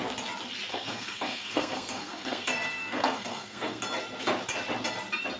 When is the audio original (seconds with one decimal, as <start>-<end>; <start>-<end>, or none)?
0.0-0.7; 3.8-5.4